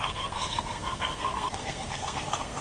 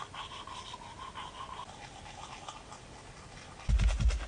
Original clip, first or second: second